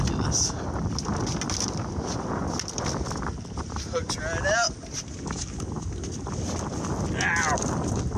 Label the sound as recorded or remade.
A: recorded